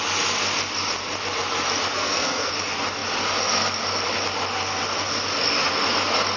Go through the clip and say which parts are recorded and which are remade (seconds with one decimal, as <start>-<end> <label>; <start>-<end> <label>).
0.0-1.9 recorded; 1.9-2.5 remade; 2.5-6.4 recorded